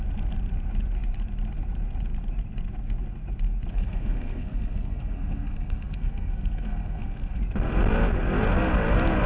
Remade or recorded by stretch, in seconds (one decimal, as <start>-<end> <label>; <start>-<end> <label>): 0.0-3.7 recorded; 3.7-7.4 remade; 7.4-9.3 recorded